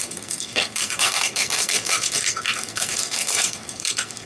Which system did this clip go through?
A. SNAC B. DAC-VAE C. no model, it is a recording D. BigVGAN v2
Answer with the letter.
A